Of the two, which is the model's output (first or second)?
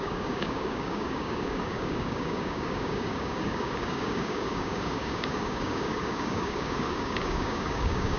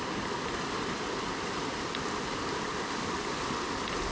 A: first